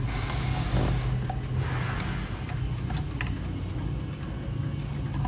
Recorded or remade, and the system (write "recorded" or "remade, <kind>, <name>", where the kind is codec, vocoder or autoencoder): recorded